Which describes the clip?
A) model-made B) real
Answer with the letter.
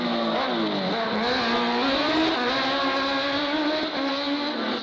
B